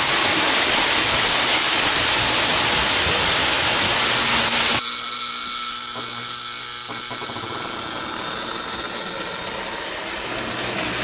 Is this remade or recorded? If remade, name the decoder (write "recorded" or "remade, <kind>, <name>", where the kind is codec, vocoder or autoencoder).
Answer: recorded